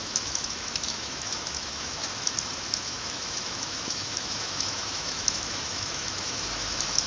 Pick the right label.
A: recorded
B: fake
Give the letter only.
B